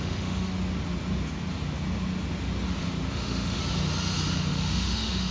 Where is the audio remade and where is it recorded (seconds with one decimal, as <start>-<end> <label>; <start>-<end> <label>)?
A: 0.0-0.5 remade; 0.5-3.1 recorded; 3.1-3.6 remade; 3.6-4.5 recorded; 4.5-5.3 remade